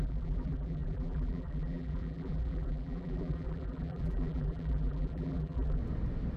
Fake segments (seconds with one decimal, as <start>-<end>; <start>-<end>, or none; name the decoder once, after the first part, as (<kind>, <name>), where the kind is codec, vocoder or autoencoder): 0.0-5.8 (vocoder, BigVGAN v2)